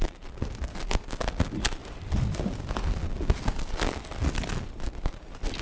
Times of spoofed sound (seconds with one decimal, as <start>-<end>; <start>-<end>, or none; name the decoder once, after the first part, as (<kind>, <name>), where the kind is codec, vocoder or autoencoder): none